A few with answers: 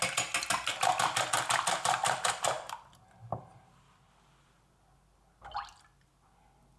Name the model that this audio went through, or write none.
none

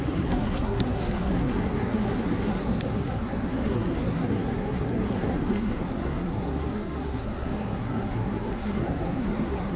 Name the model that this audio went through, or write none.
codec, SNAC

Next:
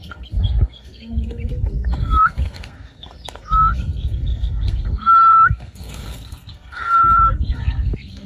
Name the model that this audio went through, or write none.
codec, SNAC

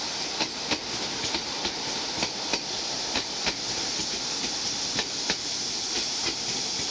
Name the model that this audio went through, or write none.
none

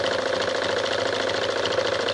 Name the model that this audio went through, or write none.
none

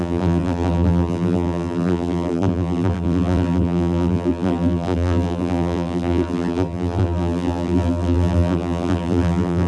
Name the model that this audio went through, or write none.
vocoder, BigVGAN v2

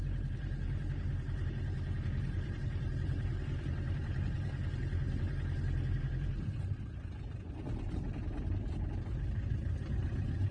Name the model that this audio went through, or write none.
vocoder, BigVGAN v2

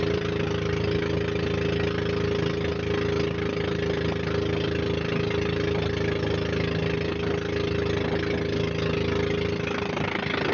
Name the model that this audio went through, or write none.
none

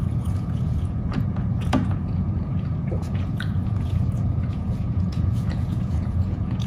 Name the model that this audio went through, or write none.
vocoder, Vocos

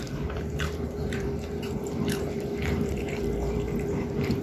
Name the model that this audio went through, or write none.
vocoder, BigVGAN v2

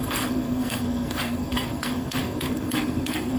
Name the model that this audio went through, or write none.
codec, SNAC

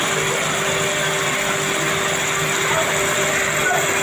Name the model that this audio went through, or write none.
none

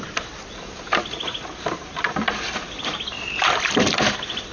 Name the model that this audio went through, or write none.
vocoder, BigVGAN v2